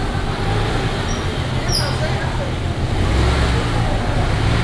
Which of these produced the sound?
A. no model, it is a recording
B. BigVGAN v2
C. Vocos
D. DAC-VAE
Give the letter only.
A